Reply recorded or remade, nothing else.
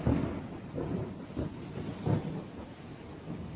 recorded